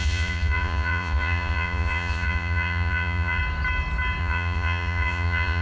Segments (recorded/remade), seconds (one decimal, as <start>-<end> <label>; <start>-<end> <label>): 0.0-3.4 remade; 3.4-4.2 recorded; 4.2-5.6 remade